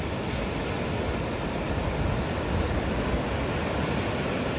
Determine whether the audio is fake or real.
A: real